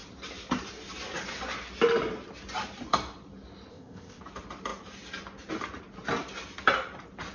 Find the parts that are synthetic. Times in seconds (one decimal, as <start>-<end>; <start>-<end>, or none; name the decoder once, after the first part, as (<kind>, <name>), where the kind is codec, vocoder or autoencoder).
3.7-4.2 (codec, ZipCodec)